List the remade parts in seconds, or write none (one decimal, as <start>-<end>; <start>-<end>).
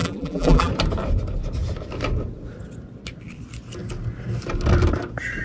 0.0-0.7